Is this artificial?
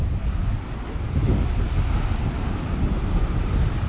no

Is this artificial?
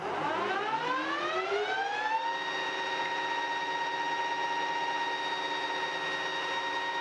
no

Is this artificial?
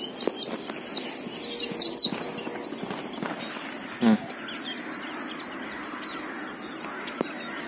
no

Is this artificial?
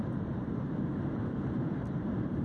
yes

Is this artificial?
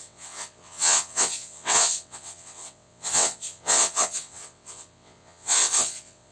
yes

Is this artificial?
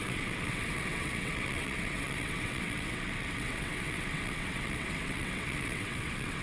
yes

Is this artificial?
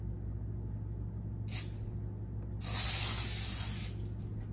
no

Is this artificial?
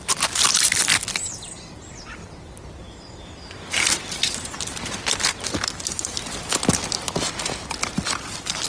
no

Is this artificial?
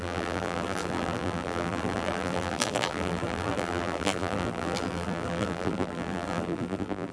yes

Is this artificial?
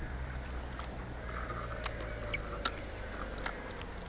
no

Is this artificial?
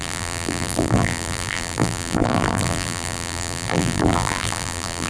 yes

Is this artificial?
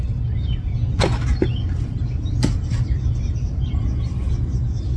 no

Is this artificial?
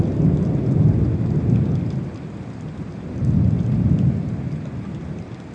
no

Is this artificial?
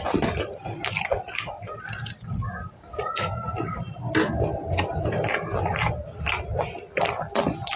no